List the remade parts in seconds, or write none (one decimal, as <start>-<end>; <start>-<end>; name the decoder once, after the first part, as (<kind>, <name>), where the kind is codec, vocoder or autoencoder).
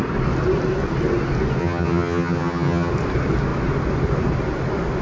1.6-2.9 (vocoder, HiFi-GAN)